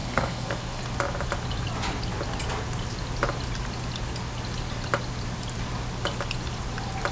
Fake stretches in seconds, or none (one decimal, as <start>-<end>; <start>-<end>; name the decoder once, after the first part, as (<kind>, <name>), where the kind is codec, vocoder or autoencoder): 0.0-0.8 (codec, SNAC)

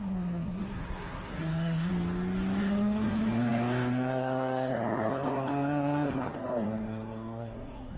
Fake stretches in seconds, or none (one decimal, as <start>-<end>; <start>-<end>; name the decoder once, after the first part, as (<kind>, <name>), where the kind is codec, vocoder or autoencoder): 0.0-1.9 (codec, SNAC); 2.6-8.0

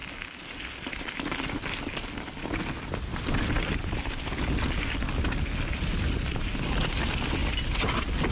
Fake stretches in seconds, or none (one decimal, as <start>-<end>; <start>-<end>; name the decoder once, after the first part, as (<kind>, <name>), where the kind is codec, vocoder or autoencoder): none

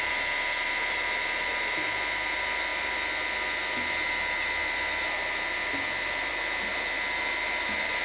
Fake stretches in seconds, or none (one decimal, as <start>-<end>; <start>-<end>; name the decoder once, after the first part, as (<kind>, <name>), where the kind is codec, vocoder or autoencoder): none

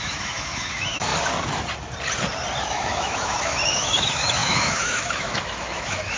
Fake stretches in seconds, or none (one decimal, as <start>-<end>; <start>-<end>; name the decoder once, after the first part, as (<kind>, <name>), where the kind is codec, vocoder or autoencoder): 0.0-1.1 (autoencoder, DAC-VAE); 2.6-6.2

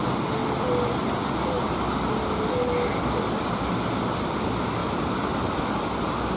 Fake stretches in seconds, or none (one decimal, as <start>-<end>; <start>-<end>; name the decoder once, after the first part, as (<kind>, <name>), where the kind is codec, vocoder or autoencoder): none

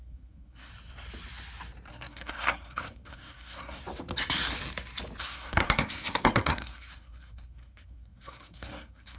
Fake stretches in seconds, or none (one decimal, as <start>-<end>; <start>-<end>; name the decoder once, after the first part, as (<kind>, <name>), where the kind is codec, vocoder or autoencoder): 0.0-0.7 (codec, SNAC); 1.9-3.8; 5.2-9.2

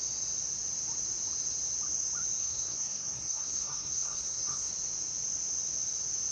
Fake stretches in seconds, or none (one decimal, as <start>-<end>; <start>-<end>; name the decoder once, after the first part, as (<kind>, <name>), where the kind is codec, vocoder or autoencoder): 2.4-4.7 (codec, SNAC)